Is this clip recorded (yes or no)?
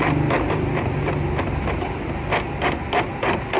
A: yes